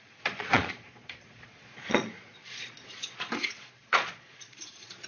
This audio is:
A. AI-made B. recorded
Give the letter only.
A